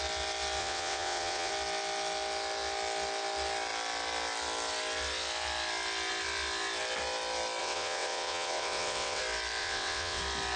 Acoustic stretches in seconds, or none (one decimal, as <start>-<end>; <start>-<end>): 0.0-0.6; 1.5-7.6; 9.2-9.6; 10.2-10.6